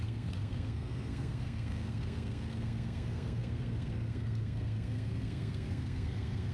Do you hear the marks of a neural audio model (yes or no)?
yes